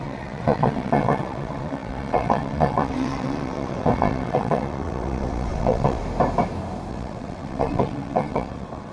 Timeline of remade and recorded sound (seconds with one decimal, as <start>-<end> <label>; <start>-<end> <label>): 0.0-6.0 remade; 6.0-6.9 recorded; 6.9-8.9 remade